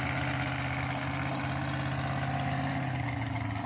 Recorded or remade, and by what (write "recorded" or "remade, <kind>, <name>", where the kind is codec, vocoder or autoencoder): recorded